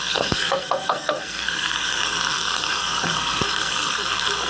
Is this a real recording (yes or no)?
no